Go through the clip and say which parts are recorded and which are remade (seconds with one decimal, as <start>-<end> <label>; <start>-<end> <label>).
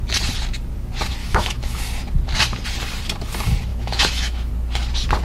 0.0-1.2 recorded; 1.2-1.8 remade; 1.8-3.7 recorded; 3.7-4.5 remade; 4.5-5.2 recorded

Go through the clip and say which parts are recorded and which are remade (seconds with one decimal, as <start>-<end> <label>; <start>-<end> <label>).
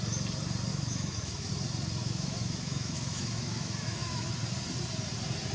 0.0-0.7 recorded; 0.7-1.5 remade; 1.5-2.0 recorded; 2.0-4.3 remade; 4.3-5.5 recorded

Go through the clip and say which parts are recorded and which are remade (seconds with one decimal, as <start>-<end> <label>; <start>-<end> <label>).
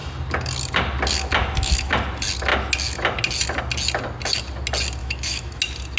0.0-1.4 recorded; 1.4-1.9 remade; 1.9-5.0 recorded; 5.0-5.6 remade; 5.6-6.0 recorded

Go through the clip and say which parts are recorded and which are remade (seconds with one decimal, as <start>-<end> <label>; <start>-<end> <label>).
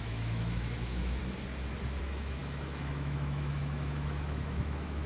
0.0-1.2 remade; 1.2-2.0 recorded; 2.0-5.1 remade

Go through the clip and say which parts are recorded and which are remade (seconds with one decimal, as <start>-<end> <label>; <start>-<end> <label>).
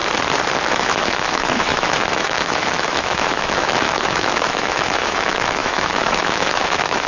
0.0-0.7 recorded; 0.7-7.1 remade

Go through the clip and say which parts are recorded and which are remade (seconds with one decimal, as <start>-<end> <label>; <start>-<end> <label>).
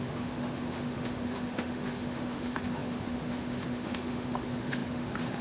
0.0-5.4 remade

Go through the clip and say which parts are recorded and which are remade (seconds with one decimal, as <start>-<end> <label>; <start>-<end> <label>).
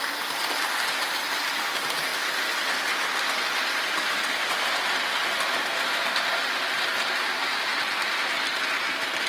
0.0-9.3 recorded